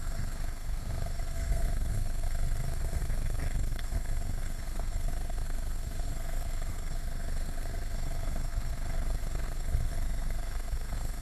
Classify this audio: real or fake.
fake